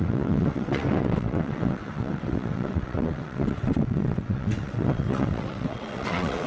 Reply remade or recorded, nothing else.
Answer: remade